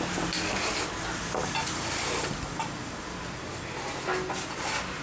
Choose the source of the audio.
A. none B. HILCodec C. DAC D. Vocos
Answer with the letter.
A